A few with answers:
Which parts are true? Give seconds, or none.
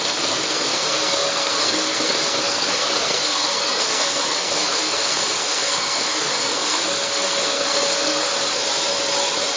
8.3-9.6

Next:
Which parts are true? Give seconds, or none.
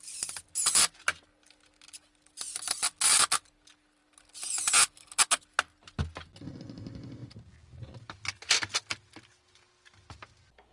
0.0-10.7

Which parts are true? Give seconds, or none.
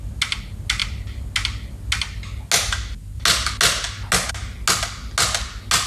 0.0-5.9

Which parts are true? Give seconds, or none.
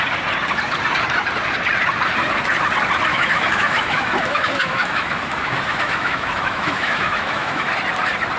0.0-3.1; 7.7-8.4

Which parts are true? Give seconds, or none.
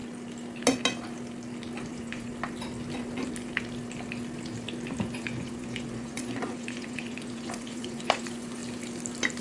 0.0-1.9; 2.3-5.0; 8.6-9.4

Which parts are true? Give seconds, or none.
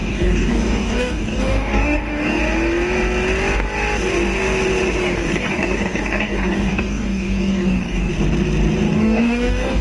2.4-5.0; 8.1-8.9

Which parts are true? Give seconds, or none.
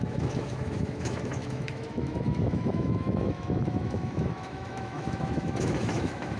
none